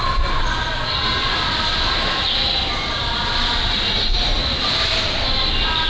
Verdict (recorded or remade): recorded